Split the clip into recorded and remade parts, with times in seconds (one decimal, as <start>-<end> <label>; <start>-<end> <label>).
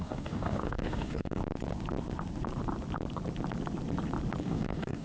0.0-1.4 remade; 1.4-4.4 recorded; 4.4-5.0 remade